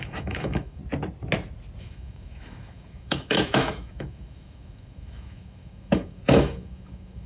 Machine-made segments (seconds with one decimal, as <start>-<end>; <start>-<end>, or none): 0.0-0.8; 1.8-7.3